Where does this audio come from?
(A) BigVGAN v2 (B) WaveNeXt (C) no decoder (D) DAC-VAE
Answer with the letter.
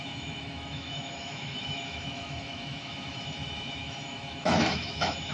D